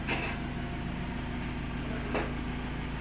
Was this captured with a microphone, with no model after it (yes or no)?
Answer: yes